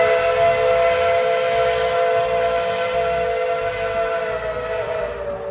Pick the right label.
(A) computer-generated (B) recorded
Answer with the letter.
B